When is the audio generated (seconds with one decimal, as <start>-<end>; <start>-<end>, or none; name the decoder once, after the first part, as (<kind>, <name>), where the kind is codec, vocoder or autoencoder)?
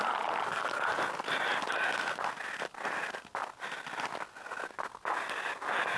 none